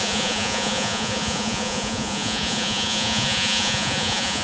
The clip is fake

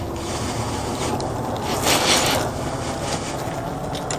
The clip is real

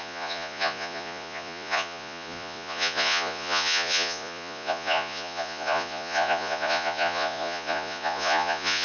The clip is fake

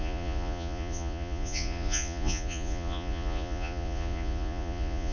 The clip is fake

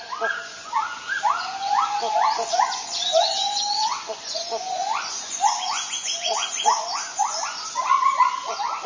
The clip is fake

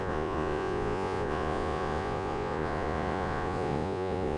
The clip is fake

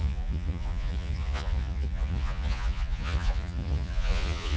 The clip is fake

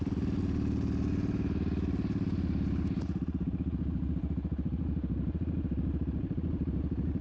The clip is real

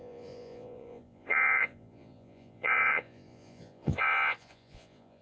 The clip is fake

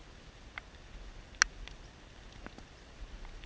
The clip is real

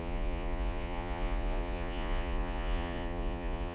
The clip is fake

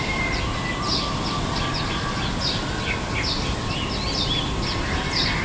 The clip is real